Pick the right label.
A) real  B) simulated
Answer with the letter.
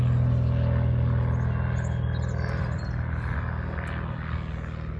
A